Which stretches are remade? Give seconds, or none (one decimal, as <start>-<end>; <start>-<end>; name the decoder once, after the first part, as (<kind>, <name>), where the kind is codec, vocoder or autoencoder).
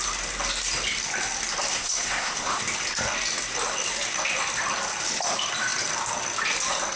1.7-2.6 (codec, SNAC)